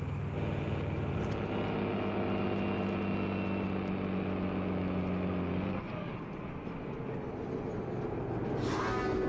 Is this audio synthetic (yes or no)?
no